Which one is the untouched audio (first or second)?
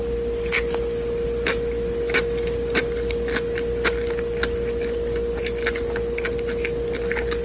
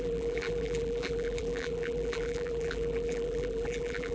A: first